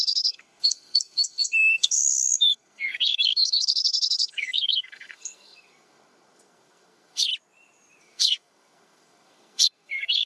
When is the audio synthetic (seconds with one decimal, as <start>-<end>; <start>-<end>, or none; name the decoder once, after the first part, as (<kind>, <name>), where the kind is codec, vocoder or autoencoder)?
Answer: 0.0-7.3 (codec, SNAC); 8.0-10.3